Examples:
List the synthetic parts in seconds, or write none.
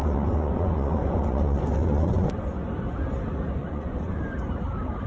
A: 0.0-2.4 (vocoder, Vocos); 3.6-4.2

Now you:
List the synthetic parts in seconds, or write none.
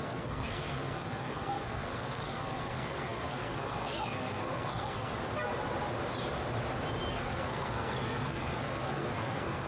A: 0.0-5.1 (codec, SNAC); 7.1-9.7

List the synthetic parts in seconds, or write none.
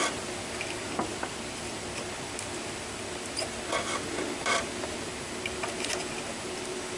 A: none